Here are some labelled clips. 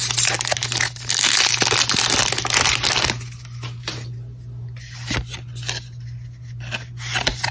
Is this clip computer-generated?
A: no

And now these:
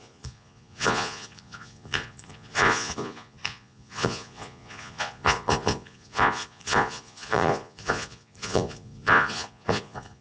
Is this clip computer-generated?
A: yes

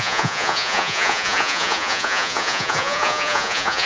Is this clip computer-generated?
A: yes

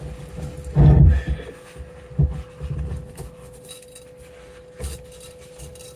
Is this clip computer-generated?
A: no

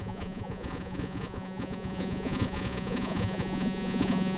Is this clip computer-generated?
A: yes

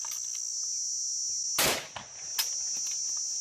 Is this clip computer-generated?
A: no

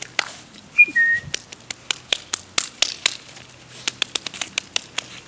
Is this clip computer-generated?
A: no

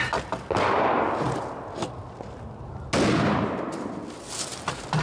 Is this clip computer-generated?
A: no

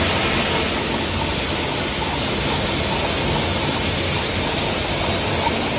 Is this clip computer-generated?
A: no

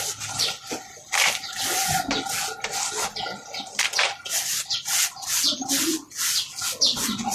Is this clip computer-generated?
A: no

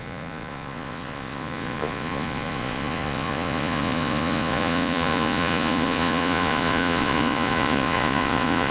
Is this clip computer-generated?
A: yes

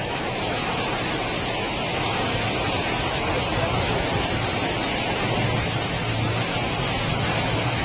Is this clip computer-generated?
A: no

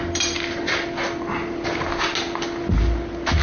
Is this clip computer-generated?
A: no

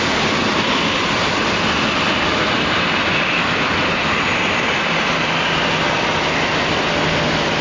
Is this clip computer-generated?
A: no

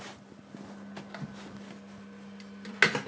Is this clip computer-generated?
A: no